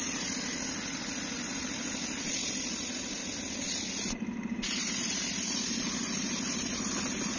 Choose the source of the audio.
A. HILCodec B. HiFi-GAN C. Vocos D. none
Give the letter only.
D